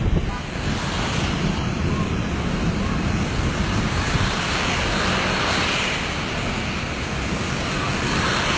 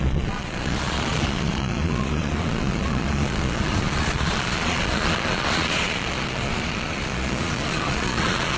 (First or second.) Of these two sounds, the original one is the first